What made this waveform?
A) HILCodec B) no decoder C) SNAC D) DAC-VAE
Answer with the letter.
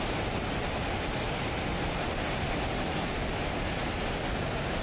B